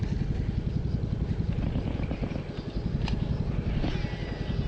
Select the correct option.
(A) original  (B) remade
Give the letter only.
A